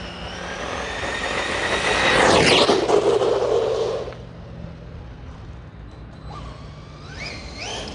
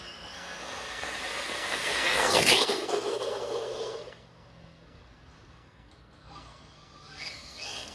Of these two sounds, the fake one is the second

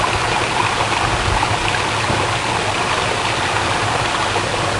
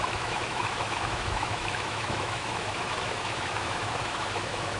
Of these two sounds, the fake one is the second